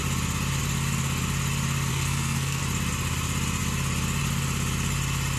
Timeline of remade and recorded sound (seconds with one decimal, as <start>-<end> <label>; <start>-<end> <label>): 0.0-1.9 recorded; 1.9-2.6 remade; 2.6-5.4 recorded